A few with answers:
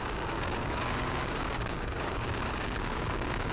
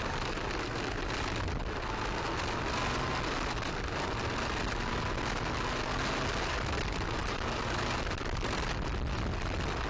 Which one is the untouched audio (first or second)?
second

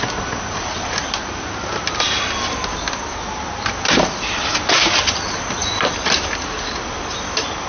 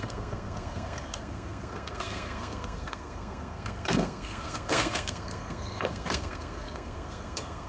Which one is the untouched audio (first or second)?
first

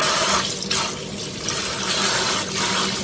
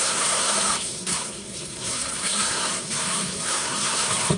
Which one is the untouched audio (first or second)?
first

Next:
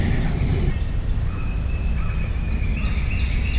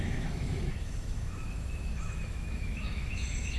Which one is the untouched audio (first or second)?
first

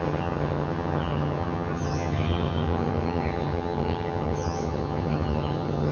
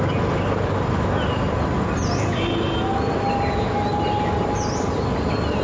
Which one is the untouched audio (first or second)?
second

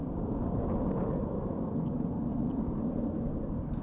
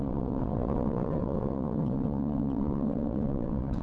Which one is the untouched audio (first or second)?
first